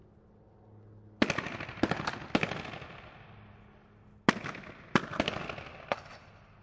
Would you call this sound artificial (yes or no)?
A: no